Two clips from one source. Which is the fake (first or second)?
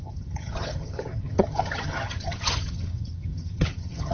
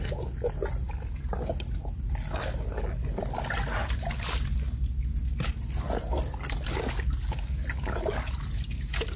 first